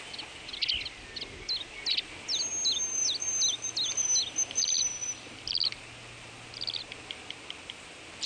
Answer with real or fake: real